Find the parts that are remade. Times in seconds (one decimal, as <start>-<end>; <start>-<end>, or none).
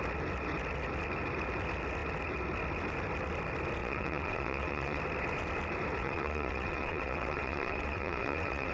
3.8-5.0; 6.0-8.7